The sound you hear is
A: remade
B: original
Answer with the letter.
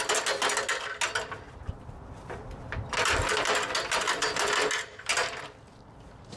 B